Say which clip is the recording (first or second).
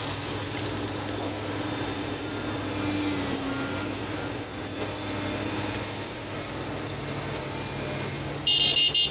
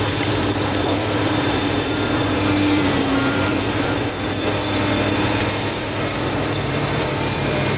first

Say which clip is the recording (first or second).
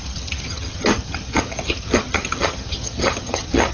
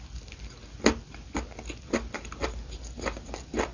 second